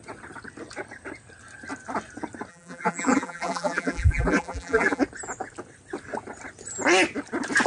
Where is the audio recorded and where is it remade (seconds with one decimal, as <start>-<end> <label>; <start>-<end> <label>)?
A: 0.0-2.5 recorded; 2.5-5.0 remade; 5.0-7.7 recorded